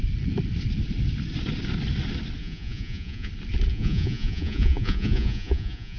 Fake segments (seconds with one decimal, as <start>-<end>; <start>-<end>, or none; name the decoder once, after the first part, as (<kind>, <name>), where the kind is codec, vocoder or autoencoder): 2.4-3.3 (vocoder, Vocos); 3.7-6.0